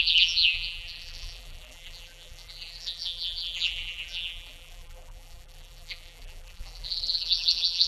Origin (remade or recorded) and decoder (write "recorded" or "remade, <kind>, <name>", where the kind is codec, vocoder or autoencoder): remade, vocoder, BigVGAN v2